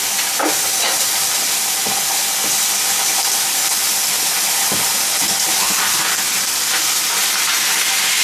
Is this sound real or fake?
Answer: real